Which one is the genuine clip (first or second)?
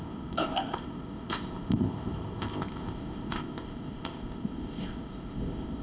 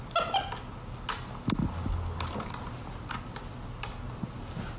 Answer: second